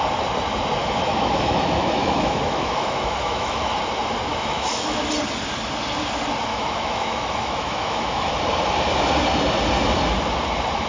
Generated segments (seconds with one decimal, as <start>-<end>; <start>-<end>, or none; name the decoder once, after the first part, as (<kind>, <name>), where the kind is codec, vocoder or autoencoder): 0.8-3.8 (autoencoder, DAC-VAE); 4.3-5.0; 6.5-8.3